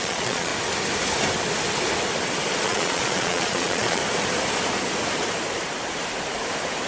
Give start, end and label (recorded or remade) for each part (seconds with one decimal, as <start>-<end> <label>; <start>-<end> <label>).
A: 0.0-0.5 remade; 0.5-2.6 recorded; 2.6-4.0 remade; 4.0-6.9 recorded